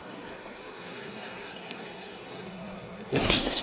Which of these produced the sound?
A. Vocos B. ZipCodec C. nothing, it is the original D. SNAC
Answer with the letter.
D